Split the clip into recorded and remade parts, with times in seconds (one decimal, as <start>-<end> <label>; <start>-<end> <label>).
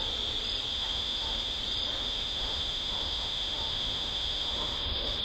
0.0-0.7 recorded; 0.7-1.6 remade; 1.6-2.0 recorded; 2.0-5.2 remade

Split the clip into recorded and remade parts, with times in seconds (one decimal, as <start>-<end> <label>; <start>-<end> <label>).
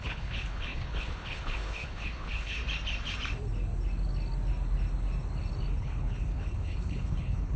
0.0-2.6 remade; 2.6-5.8 recorded; 5.8-7.6 remade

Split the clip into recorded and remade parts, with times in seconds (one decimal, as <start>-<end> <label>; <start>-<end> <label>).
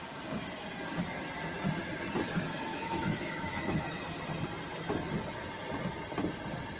0.0-2.7 recorded; 2.7-3.8 remade; 3.8-6.8 recorded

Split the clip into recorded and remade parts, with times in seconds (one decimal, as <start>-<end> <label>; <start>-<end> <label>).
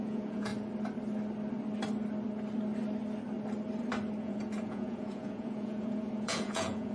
0.0-0.5 remade; 0.5-4.2 recorded; 4.2-6.9 remade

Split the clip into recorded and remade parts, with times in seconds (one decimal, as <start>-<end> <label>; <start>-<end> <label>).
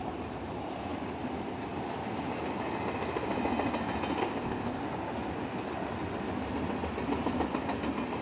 0.0-4.2 recorded; 4.2-4.8 remade; 4.8-8.2 recorded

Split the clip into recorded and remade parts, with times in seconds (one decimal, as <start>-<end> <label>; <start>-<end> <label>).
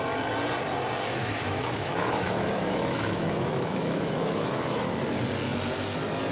0.0-1.2 recorded; 1.2-5.0 remade; 5.0-6.3 recorded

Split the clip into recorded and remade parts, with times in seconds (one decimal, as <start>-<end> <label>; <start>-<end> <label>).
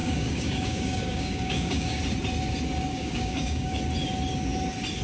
0.0-2.0 remade; 2.0-2.9 recorded; 2.9-3.8 remade; 3.8-5.0 recorded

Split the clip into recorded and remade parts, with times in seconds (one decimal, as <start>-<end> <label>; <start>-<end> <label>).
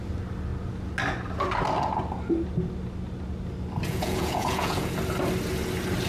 0.0-3.9 recorded; 3.9-4.9 remade; 4.9-6.1 recorded